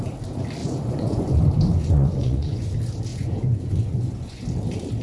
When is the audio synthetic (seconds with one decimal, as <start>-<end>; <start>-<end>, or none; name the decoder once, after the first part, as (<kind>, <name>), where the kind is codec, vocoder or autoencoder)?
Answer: 0.6-1.4 (vocoder, Vocos); 1.8-2.7; 3.1-4.4